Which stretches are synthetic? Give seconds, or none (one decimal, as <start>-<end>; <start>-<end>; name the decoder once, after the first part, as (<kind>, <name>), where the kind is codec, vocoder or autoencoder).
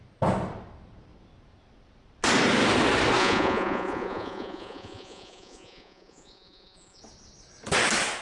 3.2-7.0 (vocoder, Vocos)